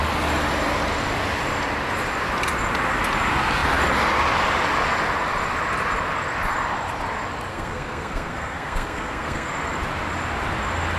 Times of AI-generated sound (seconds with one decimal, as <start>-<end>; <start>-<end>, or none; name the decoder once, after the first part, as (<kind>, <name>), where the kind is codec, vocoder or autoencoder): 7.5-9.5 (codec, SNAC)